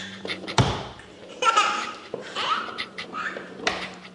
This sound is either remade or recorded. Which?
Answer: remade